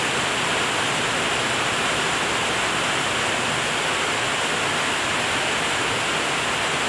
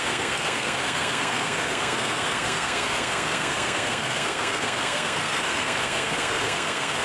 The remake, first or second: second